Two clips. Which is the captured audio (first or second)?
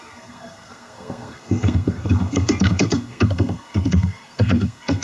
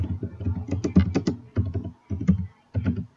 second